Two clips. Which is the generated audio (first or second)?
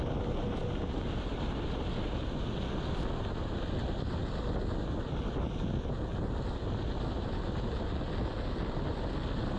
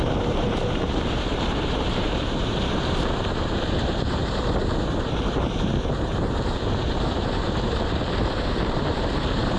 second